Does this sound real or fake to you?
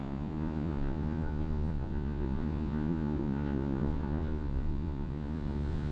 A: fake